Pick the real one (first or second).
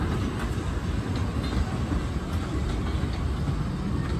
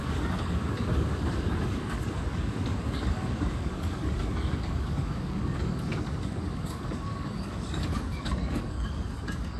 first